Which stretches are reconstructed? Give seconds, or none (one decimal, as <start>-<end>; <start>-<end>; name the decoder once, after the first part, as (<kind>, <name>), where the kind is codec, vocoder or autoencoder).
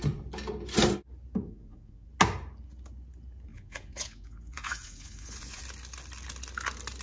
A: 1.4-2.1 (vocoder, Vocos); 3.5-5.6